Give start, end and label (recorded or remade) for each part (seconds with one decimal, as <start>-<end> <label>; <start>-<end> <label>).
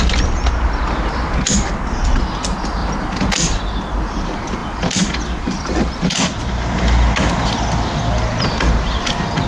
0.0-2.8 recorded; 2.8-3.6 remade; 3.6-4.6 recorded; 4.6-6.4 remade; 6.4-9.5 recorded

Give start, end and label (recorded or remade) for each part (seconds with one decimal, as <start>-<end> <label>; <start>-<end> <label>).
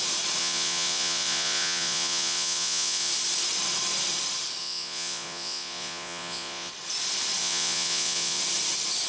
0.0-0.4 recorded; 0.4-3.1 remade; 3.1-4.6 recorded; 4.6-6.7 remade; 6.7-7.4 recorded; 7.4-8.4 remade; 8.4-9.1 recorded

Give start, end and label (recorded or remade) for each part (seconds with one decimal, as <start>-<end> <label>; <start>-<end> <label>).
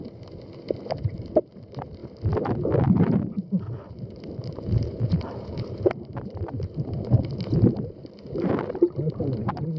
0.0-1.0 recorded; 1.0-2.0 remade; 2.0-3.9 recorded; 3.9-9.8 remade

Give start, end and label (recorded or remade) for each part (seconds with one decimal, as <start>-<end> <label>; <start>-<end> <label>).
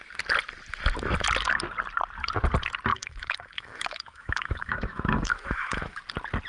0.0-2.9 recorded; 2.9-6.0 remade; 6.0-6.5 recorded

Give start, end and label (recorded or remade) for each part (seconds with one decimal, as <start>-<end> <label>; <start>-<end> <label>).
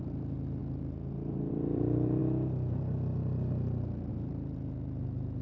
0.0-0.6 remade; 0.6-1.5 recorded; 1.5-2.2 remade; 2.2-4.1 recorded; 4.1-5.4 remade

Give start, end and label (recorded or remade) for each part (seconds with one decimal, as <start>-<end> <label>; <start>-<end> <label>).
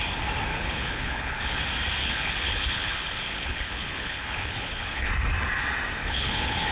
0.0-0.5 recorded; 0.5-1.6 remade; 1.6-2.0 recorded; 2.0-5.1 remade; 5.1-6.0 recorded; 6.0-6.7 remade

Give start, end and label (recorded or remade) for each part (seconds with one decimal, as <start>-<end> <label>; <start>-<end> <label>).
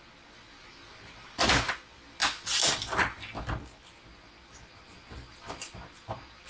0.0-6.5 recorded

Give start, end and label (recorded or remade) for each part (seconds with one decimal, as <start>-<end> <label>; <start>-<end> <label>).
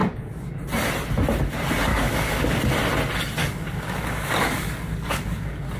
0.0-0.6 remade; 0.6-1.9 recorded; 1.9-2.6 remade; 2.6-3.4 recorded; 3.4-5.8 remade